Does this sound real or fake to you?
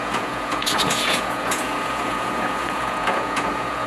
fake